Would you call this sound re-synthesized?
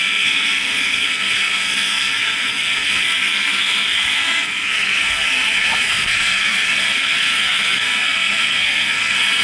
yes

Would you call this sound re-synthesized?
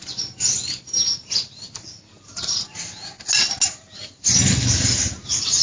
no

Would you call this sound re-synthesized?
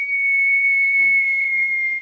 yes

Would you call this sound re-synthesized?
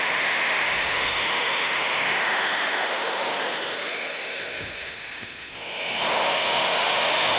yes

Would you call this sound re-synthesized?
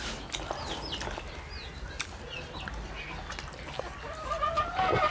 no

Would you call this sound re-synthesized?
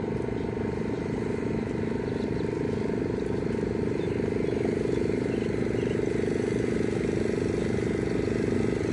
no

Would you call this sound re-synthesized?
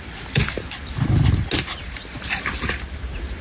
no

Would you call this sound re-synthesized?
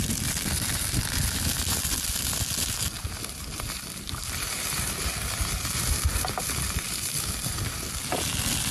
yes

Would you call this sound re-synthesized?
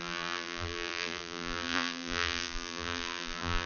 yes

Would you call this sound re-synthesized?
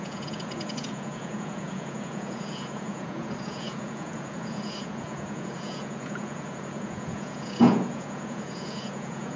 yes